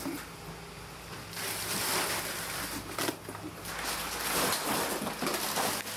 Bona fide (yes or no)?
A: yes